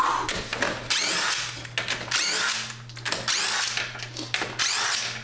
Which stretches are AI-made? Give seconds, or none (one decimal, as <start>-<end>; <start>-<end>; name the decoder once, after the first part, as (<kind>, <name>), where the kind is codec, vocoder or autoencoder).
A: none